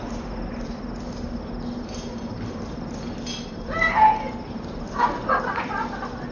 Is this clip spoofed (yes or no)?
no